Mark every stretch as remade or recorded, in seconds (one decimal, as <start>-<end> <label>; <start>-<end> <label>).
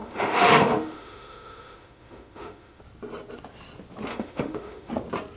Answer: 0.0-2.8 remade; 2.8-4.1 recorded; 4.1-4.9 remade; 4.9-5.4 recorded